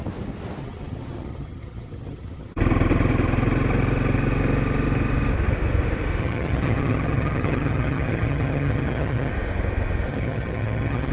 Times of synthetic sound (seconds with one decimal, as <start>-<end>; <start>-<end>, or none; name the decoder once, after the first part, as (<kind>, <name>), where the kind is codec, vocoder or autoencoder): 0.6-2.5 (vocoder, HiFi-GAN); 6.2-9.3; 10.1-11.1

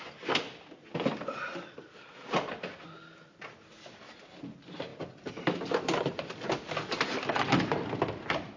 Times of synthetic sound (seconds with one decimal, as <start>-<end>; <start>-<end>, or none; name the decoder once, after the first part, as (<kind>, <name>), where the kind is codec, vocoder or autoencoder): 4.9-7.2 (vocoder, BigVGAN v2)

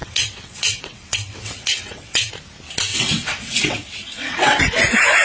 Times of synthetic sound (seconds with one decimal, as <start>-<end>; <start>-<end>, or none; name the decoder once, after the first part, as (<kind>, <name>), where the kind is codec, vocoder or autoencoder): 0.0-2.3 (vocoder, WaveNeXt); 2.9-4.6

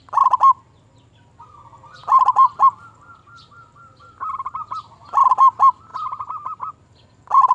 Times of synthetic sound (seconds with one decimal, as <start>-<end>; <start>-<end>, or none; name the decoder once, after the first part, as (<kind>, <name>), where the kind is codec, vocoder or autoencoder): 2.0-5.3 (vocoder, BigVGAN v2)

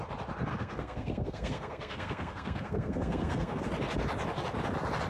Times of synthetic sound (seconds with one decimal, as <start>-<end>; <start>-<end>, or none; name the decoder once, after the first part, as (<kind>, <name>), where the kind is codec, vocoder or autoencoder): 0.5-3.6 (codec, SNAC)

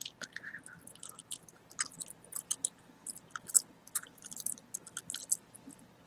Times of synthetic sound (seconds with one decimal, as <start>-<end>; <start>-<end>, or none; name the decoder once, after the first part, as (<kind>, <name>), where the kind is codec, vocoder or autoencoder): 1.2-4.9 (vocoder, BigVGAN v2)

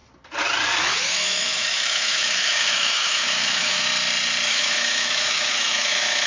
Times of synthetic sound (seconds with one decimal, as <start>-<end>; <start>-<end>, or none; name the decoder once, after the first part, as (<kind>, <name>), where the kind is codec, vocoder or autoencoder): 0.8-3.9 (autoencoder, DAC-VAE); 4.5-6.3

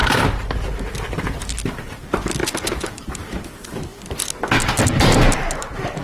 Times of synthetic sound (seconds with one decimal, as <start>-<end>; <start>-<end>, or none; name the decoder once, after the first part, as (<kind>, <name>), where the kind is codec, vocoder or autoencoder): 0.0-3.9 (vocoder, BigVGAN v2); 4.9-6.0